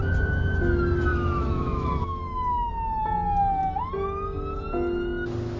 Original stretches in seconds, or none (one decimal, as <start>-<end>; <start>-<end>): 0.0-1.1; 2.7-5.6